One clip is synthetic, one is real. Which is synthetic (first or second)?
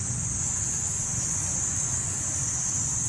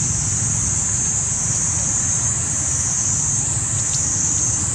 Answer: first